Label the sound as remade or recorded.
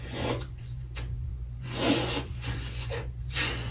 remade